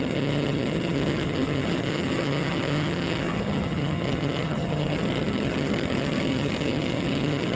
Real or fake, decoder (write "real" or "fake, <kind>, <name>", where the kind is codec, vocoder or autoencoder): fake, vocoder, HiFi-GAN